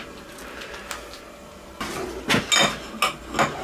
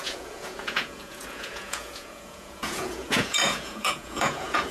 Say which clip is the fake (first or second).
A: second